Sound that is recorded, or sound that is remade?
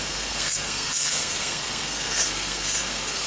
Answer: remade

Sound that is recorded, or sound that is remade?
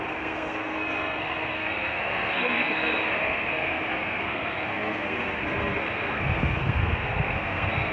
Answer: remade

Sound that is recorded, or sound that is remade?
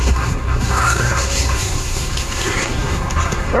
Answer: remade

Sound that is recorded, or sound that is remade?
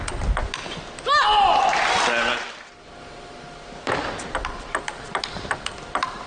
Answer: recorded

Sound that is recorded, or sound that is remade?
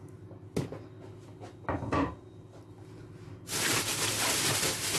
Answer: recorded